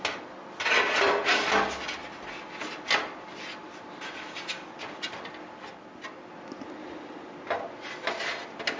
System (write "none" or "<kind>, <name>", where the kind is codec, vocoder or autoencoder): none